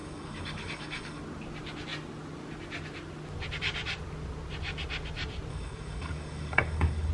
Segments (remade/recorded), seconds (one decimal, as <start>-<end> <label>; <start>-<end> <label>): 0.0-1.2 remade; 1.2-5.5 recorded; 5.5-7.1 remade

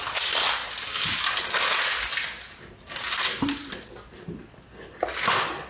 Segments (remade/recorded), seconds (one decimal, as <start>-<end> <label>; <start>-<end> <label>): 0.0-5.7 recorded

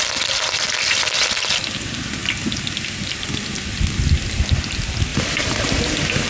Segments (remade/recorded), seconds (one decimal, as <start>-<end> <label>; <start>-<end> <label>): 0.0-5.1 recorded; 5.1-5.8 remade; 5.8-6.3 recorded

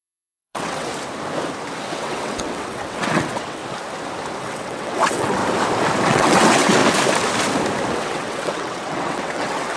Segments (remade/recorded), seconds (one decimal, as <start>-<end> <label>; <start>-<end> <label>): 0.0-0.9 remade; 0.9-1.9 recorded; 1.9-3.6 remade; 3.6-4.4 recorded; 4.4-5.4 remade; 5.4-6.1 recorded; 6.1-6.8 remade; 6.8-7.9 recorded; 7.9-9.8 remade